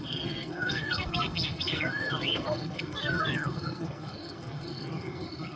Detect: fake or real fake